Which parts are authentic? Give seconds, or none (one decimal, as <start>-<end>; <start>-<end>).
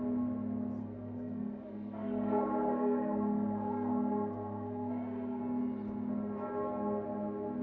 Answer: 0.0-0.8; 5.4-7.6